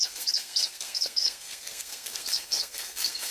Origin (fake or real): fake